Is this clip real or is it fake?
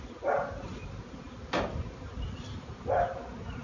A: real